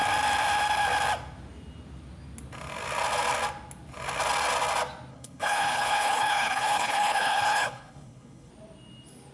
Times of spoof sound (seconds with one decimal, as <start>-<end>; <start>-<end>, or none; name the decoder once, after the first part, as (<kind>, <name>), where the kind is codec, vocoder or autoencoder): 5.1-8.5 (codec, HILCodec)